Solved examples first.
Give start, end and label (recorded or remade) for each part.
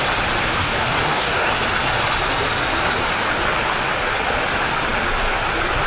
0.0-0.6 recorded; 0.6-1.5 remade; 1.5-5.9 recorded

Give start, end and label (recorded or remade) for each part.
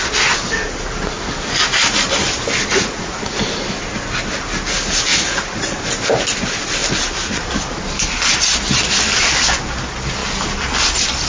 0.0-2.7 recorded; 2.7-3.4 remade; 3.4-5.1 recorded; 5.1-5.8 remade; 5.8-11.3 recorded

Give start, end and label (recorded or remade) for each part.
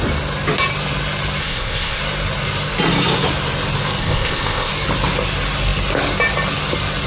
0.0-1.4 recorded; 1.4-2.0 remade; 2.0-4.0 recorded; 4.0-4.7 remade; 4.7-7.1 recorded